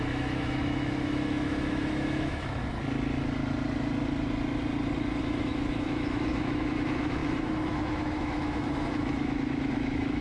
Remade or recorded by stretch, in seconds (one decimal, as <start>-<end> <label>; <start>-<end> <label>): 0.0-2.6 remade; 2.6-5.2 recorded; 5.2-10.2 remade